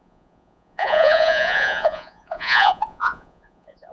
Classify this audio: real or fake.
fake